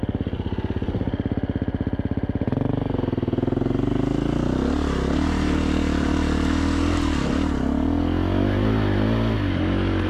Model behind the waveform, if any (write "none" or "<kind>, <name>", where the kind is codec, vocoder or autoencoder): none